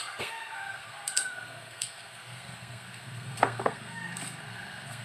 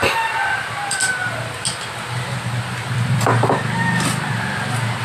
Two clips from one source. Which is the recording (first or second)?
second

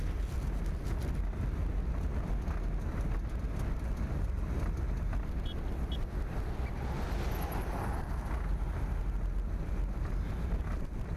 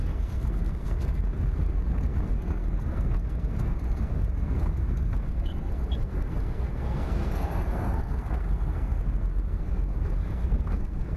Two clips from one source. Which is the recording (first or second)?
first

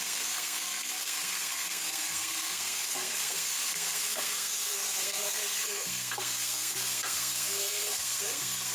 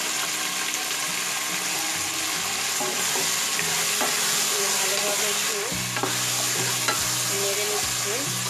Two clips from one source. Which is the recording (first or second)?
second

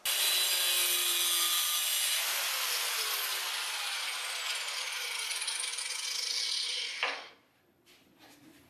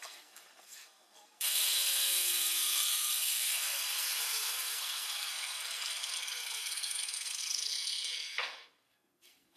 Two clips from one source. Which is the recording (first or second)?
first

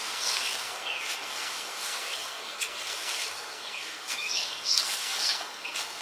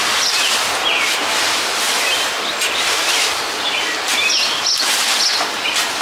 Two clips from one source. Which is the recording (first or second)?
second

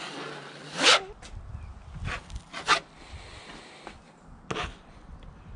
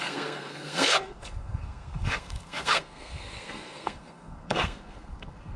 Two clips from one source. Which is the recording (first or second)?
first